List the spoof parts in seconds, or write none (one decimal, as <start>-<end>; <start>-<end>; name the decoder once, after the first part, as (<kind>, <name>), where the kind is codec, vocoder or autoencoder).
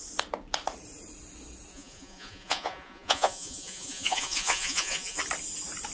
1.7-5.2 (vocoder, Vocos)